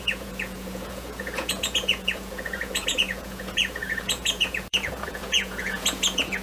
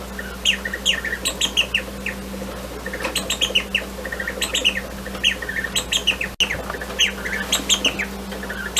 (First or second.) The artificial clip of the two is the first